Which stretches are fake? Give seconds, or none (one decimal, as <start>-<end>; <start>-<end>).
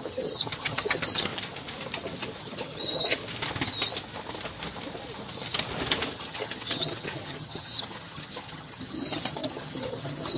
0.0-1.3; 2.4-3.2; 6.1-10.4